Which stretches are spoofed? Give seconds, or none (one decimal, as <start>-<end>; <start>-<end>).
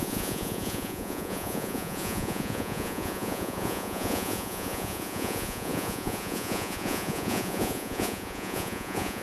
0.0-9.2